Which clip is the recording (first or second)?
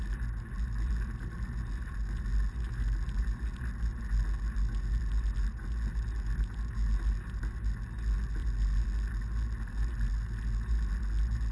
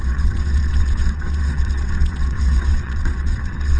first